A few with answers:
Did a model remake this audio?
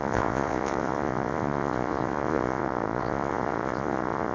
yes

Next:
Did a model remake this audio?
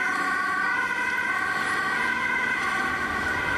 no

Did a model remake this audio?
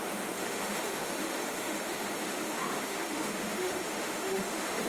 yes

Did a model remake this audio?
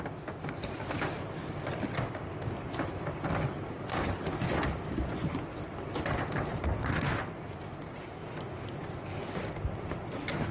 no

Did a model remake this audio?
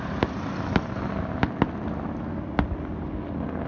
no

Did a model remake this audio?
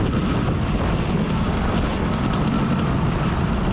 no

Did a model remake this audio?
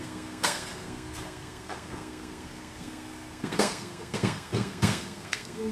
yes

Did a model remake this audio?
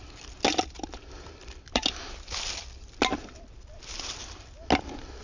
no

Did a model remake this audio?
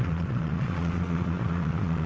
yes